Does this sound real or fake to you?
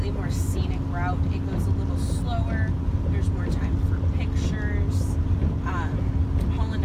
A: real